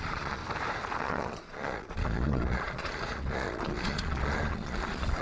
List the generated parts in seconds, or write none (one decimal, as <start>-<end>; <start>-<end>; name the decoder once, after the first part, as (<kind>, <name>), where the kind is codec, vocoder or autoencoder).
0.0-0.4 (vocoder, Vocos); 1.0-5.2